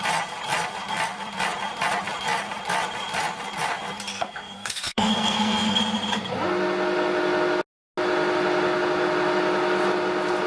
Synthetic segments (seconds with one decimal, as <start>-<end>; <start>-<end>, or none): 4.1-5.8